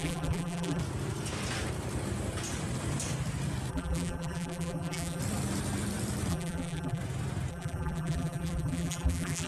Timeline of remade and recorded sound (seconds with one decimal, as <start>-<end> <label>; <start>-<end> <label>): 0.0-0.8 remade; 0.8-3.7 recorded; 3.7-5.2 remade; 5.2-6.3 recorded; 6.3-7.0 remade; 7.0-7.5 recorded; 7.5-9.5 remade